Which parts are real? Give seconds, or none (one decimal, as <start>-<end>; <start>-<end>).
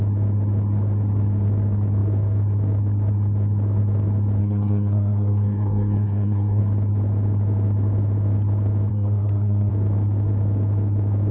0.0-4.4; 6.6-8.9; 9.7-11.3